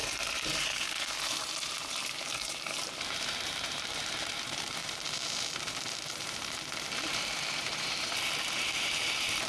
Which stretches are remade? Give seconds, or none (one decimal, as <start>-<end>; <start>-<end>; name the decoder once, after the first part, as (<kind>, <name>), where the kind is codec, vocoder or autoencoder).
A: 0.0-9.5 (vocoder, BigVGAN v2)